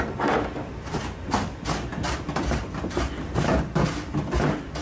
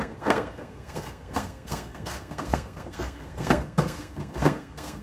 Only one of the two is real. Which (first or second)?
first